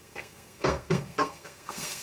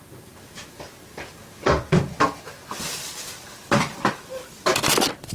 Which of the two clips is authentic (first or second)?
second